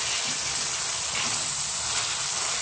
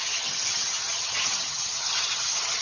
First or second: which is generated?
second